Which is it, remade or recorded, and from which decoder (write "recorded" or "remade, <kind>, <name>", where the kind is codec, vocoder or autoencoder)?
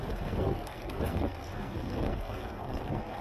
remade, codec, SNAC